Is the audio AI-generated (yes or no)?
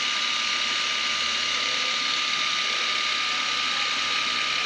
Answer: no